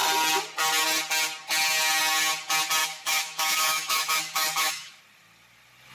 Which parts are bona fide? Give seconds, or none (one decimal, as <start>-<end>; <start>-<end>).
0.0-2.8; 5.0-5.9